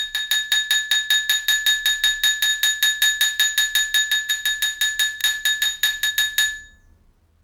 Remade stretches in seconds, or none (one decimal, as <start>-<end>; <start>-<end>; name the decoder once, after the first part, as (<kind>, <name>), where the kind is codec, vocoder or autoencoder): none